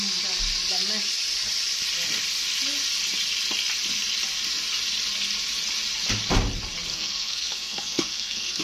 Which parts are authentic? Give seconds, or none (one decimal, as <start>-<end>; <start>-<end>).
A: 0.0-6.9